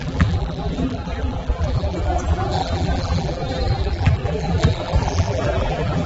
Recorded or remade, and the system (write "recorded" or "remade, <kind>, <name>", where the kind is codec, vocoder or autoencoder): remade, vocoder, BigVGAN v2